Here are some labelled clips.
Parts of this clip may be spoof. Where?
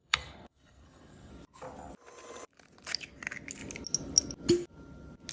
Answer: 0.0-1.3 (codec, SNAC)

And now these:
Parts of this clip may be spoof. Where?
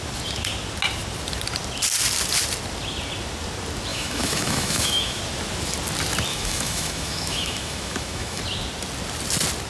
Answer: 3.9-5.2 (autoencoder, DAC-VAE); 6.3-8.4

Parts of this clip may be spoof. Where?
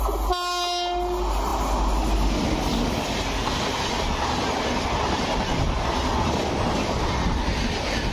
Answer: none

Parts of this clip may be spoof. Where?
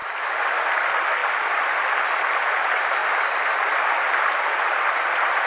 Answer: none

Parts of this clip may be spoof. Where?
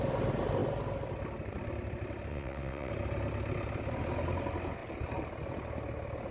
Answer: 2.3-2.9 (vocoder, WaveNeXt)